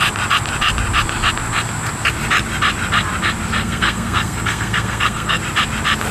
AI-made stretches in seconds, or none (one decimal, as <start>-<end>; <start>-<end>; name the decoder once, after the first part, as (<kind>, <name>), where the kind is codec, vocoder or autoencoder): 3.6-5.4 (codec, SNAC)